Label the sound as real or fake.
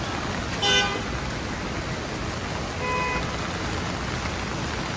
real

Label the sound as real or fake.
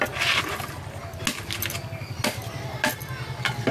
real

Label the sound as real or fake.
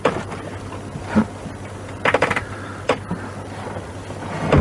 real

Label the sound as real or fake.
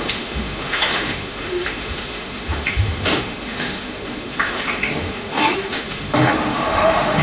fake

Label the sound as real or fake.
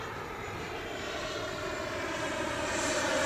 fake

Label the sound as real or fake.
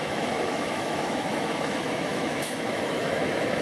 fake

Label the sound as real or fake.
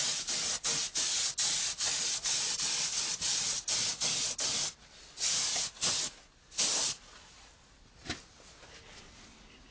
real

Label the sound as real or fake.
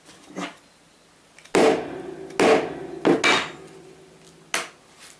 real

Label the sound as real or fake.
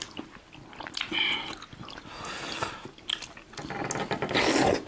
real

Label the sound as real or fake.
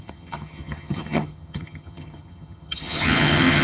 fake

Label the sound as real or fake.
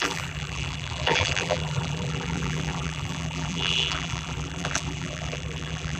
fake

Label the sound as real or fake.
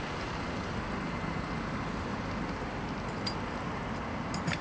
real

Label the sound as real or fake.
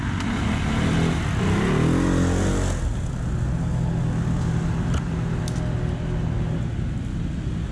real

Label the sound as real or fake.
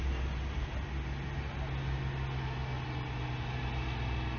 real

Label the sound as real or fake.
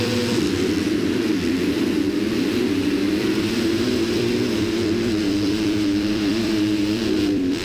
fake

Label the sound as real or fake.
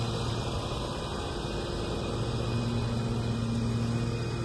real